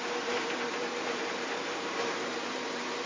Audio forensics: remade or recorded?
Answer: remade